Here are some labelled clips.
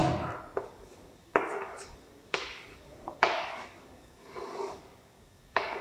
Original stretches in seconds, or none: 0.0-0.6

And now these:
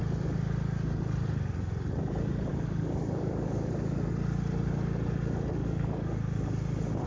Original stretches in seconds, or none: 0.0-2.5; 3.7-5.6; 6.2-7.1

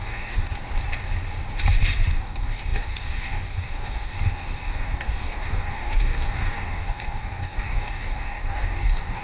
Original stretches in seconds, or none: 0.5-2.1